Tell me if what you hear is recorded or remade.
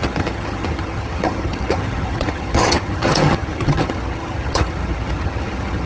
remade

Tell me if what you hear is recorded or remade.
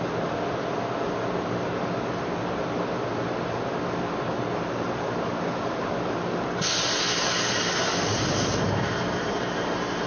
recorded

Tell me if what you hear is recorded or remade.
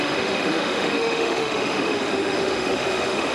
remade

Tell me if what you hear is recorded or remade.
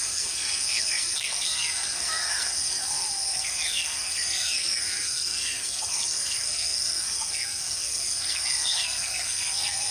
remade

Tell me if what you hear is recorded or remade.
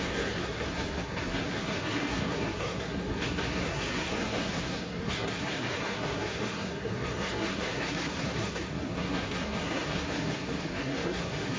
remade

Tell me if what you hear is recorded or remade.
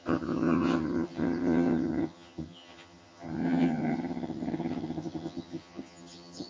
remade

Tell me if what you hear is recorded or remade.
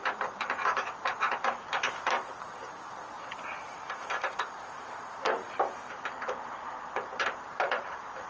remade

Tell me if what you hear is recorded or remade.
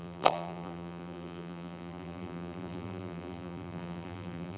remade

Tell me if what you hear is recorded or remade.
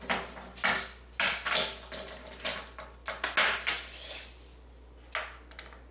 recorded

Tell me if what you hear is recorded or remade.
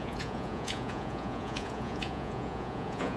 remade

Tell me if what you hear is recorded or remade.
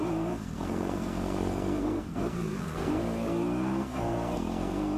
remade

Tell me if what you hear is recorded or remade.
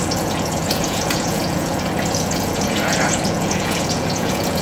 remade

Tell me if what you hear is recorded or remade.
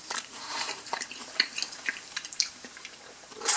remade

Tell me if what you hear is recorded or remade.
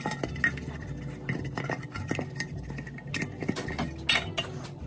recorded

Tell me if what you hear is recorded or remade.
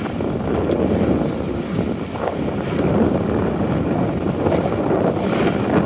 recorded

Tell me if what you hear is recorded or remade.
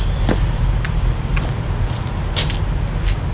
recorded